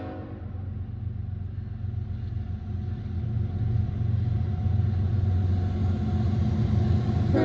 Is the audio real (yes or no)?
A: yes